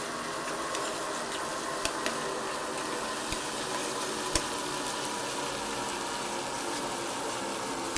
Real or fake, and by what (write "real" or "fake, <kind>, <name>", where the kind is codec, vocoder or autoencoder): real